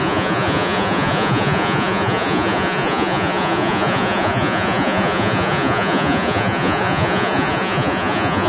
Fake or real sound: fake